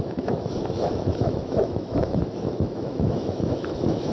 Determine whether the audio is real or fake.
fake